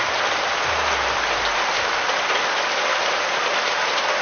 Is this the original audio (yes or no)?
yes